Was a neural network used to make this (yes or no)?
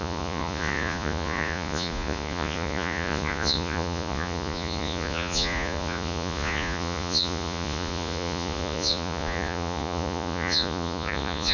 yes